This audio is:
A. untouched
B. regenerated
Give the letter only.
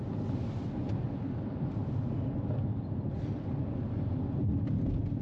A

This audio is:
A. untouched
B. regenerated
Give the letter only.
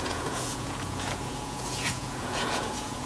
B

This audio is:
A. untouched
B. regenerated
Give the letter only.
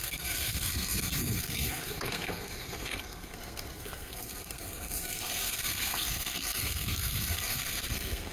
B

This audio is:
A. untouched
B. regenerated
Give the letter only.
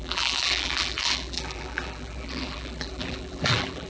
B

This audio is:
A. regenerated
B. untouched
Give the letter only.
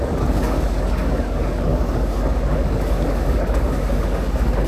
A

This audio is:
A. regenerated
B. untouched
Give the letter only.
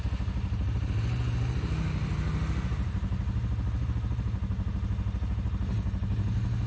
B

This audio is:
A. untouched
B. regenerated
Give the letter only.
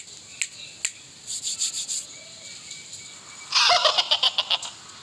A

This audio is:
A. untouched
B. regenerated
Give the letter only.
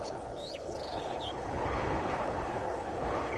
B